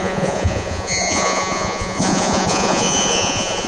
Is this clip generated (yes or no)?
yes